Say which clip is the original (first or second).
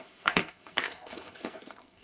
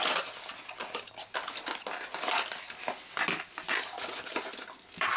second